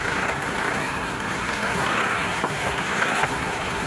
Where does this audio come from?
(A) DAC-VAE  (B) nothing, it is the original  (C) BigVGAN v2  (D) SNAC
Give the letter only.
D